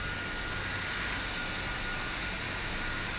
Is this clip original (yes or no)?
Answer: yes